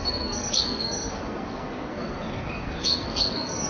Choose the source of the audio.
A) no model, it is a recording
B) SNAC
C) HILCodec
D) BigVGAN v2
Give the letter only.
B